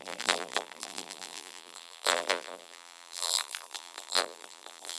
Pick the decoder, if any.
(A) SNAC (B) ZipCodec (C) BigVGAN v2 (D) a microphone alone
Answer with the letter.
C